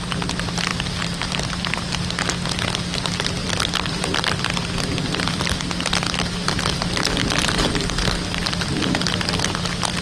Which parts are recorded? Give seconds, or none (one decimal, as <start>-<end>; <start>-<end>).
0.0-0.7; 1.5-3.4; 5.3-7.2; 9.1-10.0